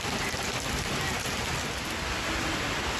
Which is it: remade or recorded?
recorded